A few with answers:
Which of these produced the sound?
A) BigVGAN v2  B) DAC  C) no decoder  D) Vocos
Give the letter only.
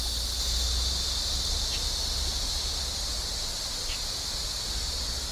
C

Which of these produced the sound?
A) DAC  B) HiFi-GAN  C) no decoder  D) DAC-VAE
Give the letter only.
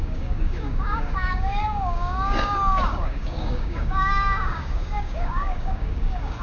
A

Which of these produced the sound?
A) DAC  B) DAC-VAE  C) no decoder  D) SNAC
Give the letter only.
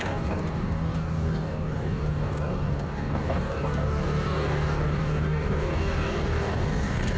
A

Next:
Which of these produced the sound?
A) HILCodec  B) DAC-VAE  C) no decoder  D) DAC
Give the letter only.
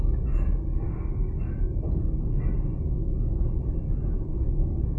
C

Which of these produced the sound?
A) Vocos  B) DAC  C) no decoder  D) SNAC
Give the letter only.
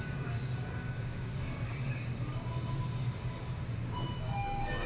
B